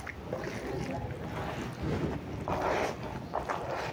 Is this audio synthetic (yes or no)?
no